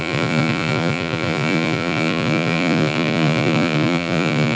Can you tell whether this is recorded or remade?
remade